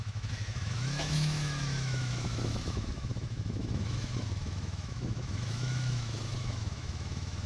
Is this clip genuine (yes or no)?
no